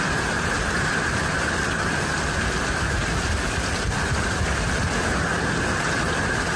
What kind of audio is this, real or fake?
fake